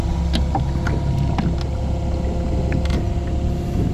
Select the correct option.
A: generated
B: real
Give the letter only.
B